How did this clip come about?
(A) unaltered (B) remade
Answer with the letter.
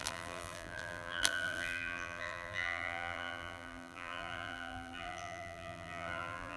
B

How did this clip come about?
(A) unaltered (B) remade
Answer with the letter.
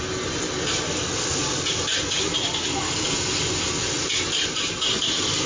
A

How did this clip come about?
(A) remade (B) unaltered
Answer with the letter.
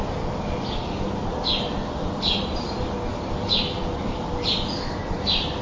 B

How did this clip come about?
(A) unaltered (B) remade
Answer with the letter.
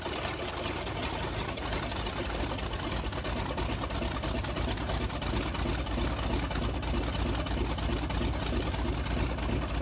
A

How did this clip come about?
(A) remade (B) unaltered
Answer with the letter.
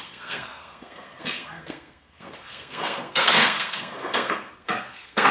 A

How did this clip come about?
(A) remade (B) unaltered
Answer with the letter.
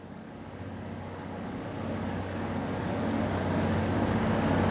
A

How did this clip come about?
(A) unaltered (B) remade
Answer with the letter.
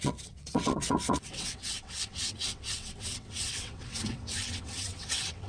B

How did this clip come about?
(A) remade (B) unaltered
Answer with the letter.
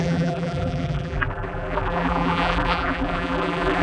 A